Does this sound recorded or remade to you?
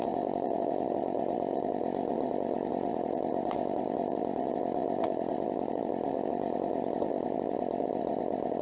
remade